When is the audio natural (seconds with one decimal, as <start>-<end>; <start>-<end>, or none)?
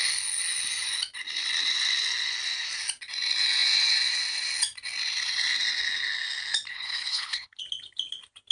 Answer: 0.0-6.7; 7.6-8.5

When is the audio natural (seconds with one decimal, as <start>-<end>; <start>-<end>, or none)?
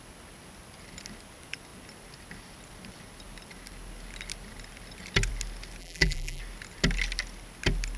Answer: 0.0-5.8; 6.4-8.0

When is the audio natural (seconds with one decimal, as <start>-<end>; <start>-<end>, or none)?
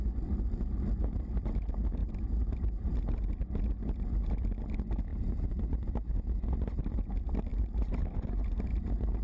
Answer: 0.0-2.0; 3.4-5.1; 5.8-7.5; 8.0-9.2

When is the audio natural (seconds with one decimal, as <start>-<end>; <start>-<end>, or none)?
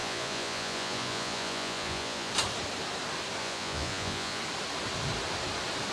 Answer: 2.3-3.4; 4.4-5.9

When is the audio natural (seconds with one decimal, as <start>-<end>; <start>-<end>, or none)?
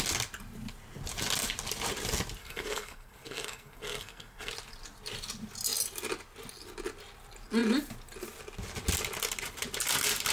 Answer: 0.0-2.4; 4.5-10.3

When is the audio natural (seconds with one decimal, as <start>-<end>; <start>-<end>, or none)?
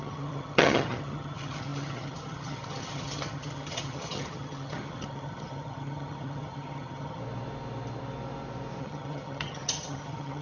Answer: 7.2-8.8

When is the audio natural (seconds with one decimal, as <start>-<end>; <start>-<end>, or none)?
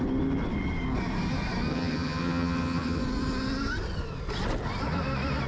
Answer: 0.0-1.7; 3.0-5.5